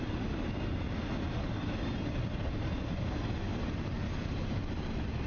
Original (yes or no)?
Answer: yes